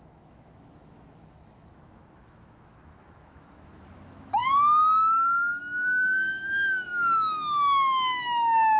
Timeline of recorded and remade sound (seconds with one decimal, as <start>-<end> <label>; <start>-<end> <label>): 0.0-8.8 remade